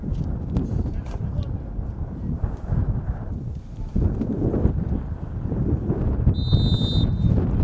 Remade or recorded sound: recorded